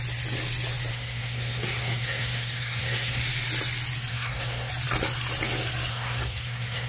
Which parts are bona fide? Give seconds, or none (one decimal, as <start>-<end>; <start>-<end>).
0.0-0.9; 3.2-4.1; 4.7-5.9